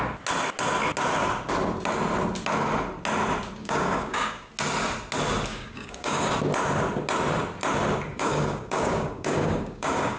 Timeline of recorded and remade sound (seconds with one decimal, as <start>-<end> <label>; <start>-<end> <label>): 0.0-3.6 recorded; 3.6-4.5 remade; 4.5-5.5 recorded; 5.5-6.3 remade; 6.3-8.1 recorded; 8.1-10.2 remade